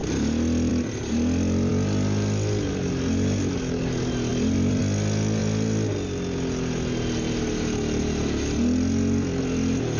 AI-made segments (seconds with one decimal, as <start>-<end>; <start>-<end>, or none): 0.0-0.7; 4.3-4.8